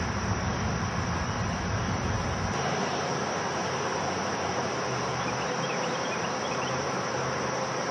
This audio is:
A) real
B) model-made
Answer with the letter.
B